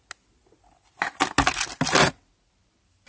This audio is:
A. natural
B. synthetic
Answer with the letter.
A